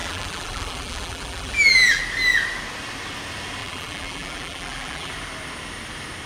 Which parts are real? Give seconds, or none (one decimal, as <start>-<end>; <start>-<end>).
2.0-3.6; 5.1-6.3